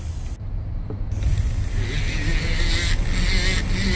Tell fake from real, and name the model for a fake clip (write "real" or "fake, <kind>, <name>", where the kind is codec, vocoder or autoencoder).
real